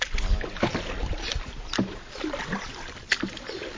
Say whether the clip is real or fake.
real